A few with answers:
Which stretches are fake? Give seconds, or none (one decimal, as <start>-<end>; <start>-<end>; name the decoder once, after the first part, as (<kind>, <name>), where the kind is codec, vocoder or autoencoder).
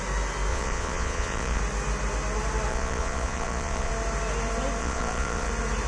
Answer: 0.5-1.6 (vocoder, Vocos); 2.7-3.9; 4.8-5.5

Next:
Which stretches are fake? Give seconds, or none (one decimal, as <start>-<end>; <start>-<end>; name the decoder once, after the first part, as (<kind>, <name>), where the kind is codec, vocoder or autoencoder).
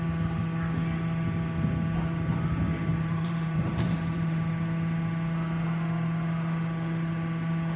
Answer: 2.9-4.5 (vocoder, BigVGAN v2)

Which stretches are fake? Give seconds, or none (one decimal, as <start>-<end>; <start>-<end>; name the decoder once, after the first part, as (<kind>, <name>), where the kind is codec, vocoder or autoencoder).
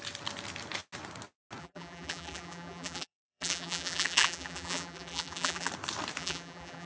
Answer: 1.6-5.7 (vocoder, BigVGAN v2); 6.2-6.9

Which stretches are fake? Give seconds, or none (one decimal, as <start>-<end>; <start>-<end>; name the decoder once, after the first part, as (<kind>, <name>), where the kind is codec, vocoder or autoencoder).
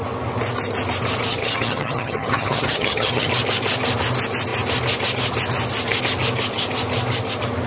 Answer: 1.3-3.3 (vocoder, HiFi-GAN)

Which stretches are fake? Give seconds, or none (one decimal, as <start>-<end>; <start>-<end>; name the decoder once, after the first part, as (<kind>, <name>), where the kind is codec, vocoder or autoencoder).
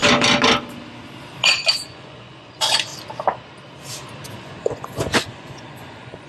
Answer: 1.7-2.9 (vocoder, Vocos); 4.3-6.3